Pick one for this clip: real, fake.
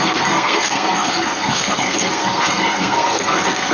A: fake